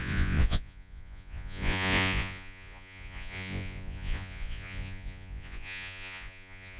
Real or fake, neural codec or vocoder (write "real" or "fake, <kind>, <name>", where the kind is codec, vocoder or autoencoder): fake, vocoder, Vocos